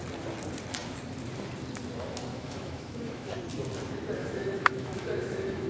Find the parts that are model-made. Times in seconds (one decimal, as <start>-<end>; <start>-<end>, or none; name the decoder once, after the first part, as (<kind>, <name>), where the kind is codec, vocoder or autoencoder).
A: 2.3-3.3 (autoencoder, DAC-VAE); 4.2-5.7